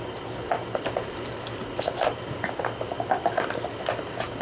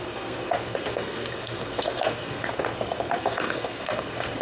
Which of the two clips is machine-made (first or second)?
second